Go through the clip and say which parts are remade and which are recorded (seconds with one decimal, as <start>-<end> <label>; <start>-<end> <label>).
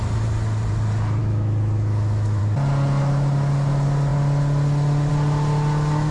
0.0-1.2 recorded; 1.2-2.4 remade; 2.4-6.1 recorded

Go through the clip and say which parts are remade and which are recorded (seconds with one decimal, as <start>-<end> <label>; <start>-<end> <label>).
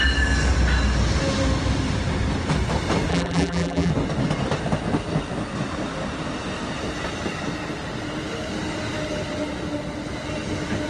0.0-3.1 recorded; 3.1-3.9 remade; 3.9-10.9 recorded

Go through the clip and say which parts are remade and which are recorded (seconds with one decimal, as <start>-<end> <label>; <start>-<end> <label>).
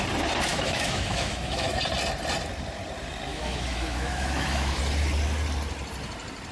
0.0-0.5 recorded; 0.5-1.8 remade; 1.8-3.3 recorded; 3.3-4.8 remade; 4.8-6.5 recorded